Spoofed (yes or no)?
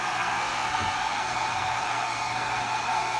yes